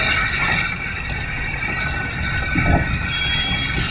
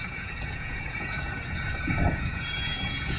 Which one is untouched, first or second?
first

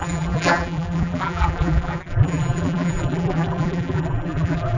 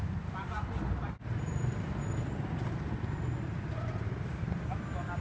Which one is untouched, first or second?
second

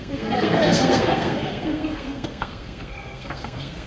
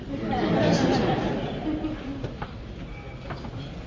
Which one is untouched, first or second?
second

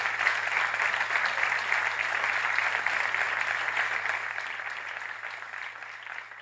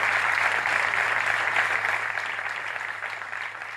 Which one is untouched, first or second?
first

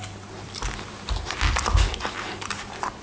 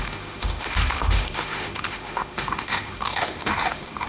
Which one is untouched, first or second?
first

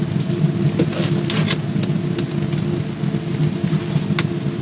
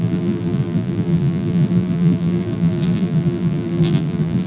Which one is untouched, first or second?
first